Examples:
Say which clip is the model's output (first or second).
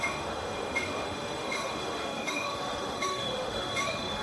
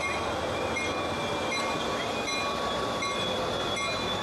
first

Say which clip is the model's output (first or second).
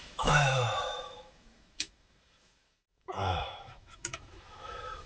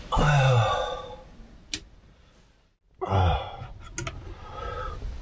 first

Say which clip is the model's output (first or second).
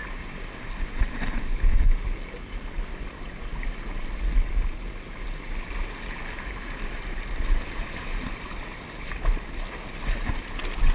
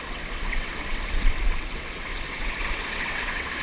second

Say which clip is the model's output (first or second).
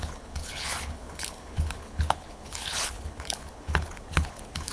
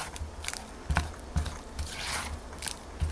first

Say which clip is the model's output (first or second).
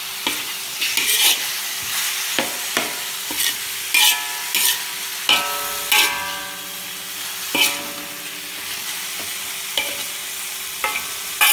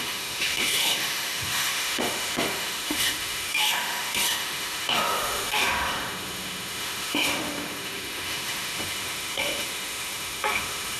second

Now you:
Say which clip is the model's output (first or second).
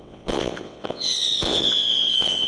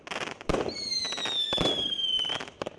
first